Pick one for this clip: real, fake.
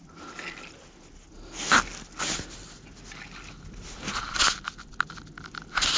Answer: real